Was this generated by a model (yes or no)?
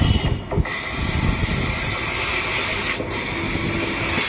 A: no